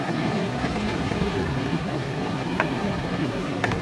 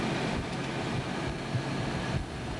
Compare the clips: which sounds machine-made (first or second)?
first